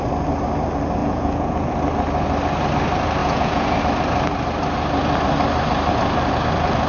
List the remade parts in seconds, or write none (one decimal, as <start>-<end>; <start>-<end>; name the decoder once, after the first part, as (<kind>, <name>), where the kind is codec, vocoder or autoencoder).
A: 1.0-1.7 (vocoder, Vocos); 3.2-3.8